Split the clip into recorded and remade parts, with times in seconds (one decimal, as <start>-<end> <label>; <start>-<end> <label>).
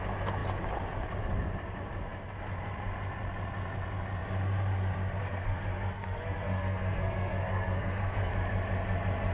0.0-5.2 recorded; 5.2-8.3 remade; 8.3-9.3 recorded